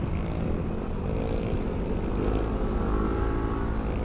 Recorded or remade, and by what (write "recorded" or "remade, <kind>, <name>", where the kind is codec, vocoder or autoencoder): recorded